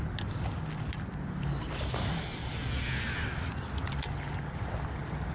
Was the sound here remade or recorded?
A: recorded